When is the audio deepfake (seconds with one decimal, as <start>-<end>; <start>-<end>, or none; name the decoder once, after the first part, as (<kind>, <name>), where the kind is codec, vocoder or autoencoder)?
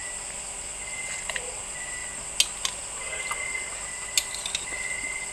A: none